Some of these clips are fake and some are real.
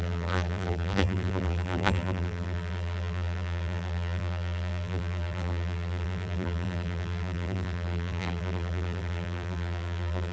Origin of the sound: fake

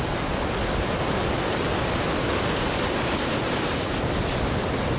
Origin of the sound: real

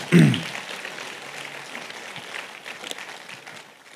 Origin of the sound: real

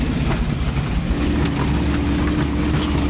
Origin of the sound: real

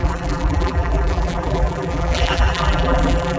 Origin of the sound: fake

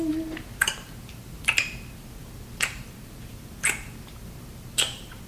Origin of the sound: fake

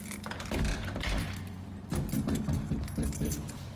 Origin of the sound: fake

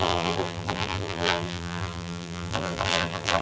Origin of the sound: fake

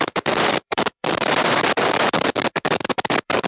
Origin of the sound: fake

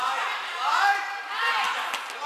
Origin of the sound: real